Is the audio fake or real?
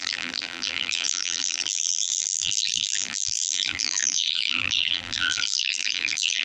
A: fake